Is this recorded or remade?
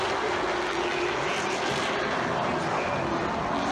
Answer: recorded